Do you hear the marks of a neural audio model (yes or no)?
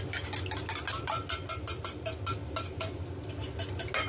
no